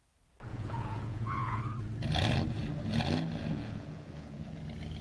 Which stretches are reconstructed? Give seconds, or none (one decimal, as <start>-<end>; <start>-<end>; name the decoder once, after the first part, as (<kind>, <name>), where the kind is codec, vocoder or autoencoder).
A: 0.5-1.6 (vocoder, Vocos); 3.5-4.6